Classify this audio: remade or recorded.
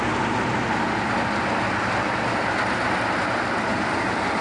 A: recorded